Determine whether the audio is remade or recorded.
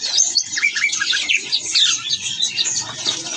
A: remade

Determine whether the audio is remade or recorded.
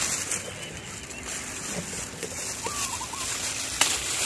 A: recorded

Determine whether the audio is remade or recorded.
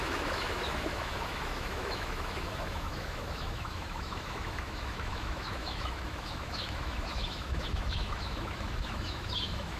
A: remade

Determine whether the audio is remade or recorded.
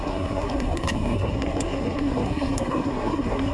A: remade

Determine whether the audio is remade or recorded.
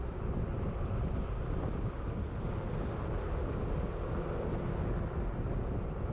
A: recorded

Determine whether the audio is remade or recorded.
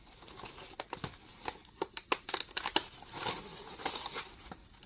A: recorded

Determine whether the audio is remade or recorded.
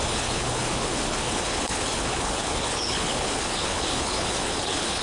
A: remade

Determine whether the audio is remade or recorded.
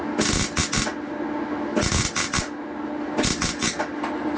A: recorded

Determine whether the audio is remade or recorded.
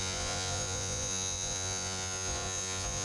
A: remade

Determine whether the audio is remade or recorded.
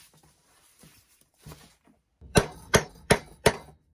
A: remade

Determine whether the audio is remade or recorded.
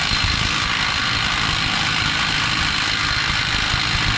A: recorded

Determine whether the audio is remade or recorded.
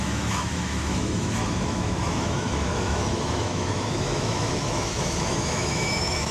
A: remade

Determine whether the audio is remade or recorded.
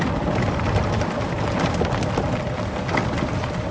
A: recorded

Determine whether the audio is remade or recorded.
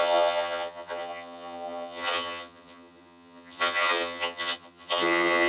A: remade